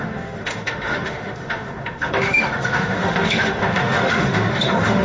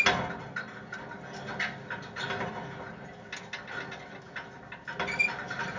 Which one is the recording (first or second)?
second